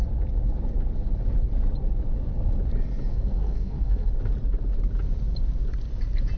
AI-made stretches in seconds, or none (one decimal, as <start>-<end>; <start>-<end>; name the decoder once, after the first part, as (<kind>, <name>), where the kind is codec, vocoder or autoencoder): 3.1-4.1 (codec, SNAC)